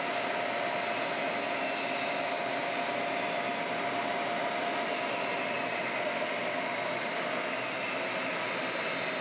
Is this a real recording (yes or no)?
yes